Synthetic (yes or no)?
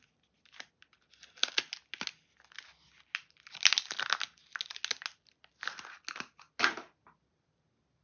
no